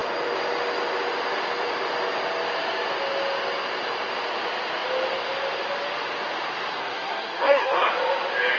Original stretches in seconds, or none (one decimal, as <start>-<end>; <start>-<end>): 0.0-6.7; 7.9-8.6

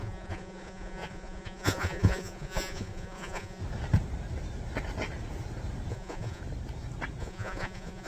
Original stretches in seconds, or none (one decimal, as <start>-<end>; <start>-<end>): 3.6-5.9; 6.4-7.2